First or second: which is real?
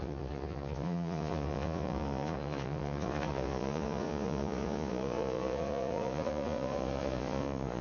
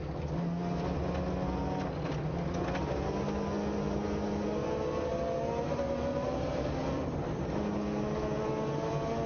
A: second